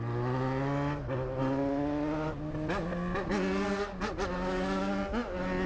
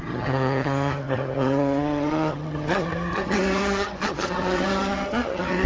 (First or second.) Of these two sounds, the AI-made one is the second